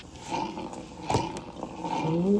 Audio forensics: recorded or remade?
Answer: recorded